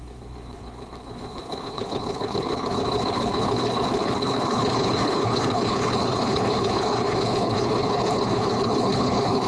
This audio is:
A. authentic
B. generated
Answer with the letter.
B